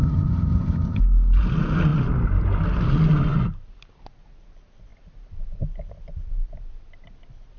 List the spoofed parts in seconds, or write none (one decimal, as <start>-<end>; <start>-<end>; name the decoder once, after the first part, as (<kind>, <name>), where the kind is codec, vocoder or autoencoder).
0.0-1.0 (vocoder, HiFi-GAN)